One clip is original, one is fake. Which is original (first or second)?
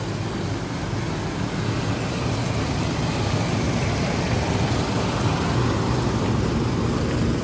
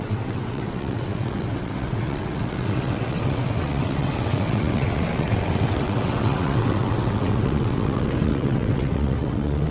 first